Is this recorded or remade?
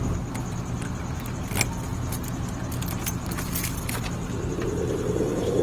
recorded